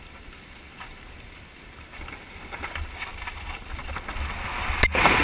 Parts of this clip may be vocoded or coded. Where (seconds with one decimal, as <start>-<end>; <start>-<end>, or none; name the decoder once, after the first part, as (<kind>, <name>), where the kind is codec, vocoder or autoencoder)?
none